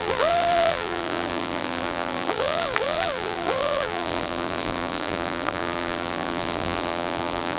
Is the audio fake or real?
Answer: fake